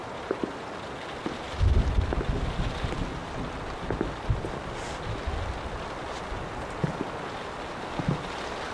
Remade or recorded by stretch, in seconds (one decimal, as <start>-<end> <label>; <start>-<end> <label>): 0.0-0.5 remade; 0.5-8.7 recorded